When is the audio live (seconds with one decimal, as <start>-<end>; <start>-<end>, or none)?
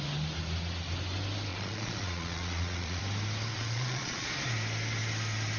0.0-1.5; 3.0-3.5; 4.3-5.6